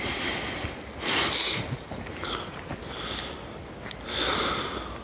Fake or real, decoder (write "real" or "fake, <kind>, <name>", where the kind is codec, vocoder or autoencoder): real